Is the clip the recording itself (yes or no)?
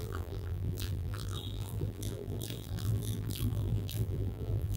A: no